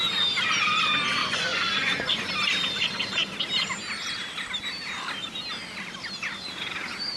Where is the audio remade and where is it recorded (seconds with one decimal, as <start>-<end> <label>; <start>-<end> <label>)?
0.0-1.2 recorded; 1.2-2.3 remade; 2.3-7.2 recorded